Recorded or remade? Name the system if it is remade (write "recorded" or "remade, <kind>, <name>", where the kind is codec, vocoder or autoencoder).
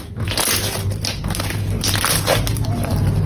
recorded